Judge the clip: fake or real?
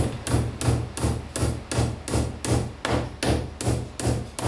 real